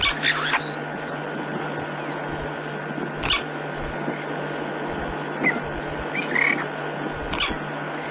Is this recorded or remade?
recorded